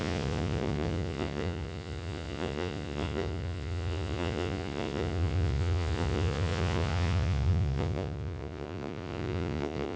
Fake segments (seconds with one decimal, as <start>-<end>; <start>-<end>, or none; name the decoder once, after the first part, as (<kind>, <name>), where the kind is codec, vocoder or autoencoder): 0.0-10.0 (vocoder, Vocos)